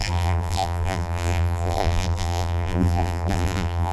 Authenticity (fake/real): fake